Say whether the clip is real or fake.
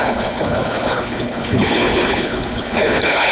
fake